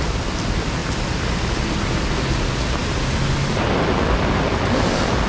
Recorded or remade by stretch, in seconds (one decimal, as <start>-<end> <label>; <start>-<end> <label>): 0.0-5.3 recorded